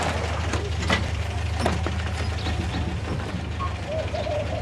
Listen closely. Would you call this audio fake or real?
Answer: real